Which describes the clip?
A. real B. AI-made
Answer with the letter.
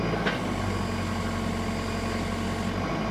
A